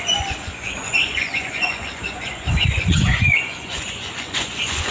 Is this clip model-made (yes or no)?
yes